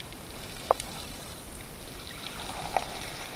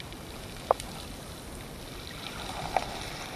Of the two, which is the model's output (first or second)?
first